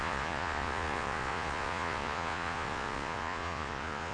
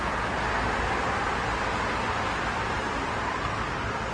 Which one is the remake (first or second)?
first